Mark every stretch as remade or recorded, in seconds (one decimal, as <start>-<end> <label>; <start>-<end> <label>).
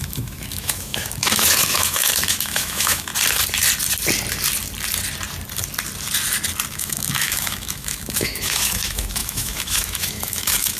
0.0-3.1 remade; 3.1-6.7 recorded; 6.7-10.8 remade